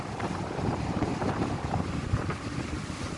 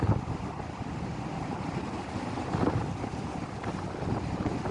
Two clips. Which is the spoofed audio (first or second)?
first